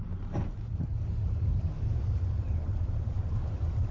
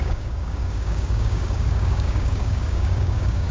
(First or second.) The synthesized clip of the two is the second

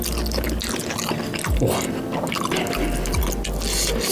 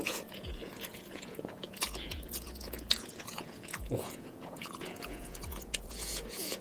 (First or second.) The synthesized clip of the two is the second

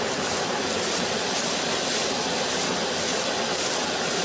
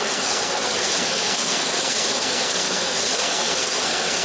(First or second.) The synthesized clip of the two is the second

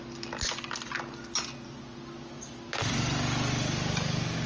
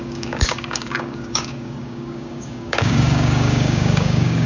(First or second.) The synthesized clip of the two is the second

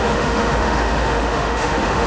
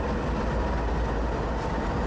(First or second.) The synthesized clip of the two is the first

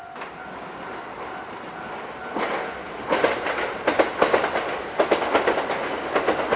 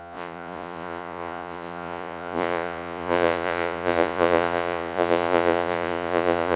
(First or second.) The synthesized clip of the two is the second